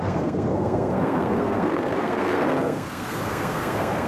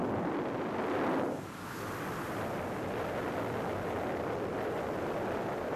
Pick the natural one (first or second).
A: second